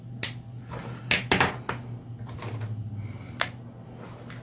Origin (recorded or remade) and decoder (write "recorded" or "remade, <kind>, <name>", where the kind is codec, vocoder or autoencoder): recorded